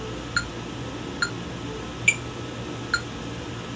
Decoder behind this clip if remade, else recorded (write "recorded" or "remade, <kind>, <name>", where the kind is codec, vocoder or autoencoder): recorded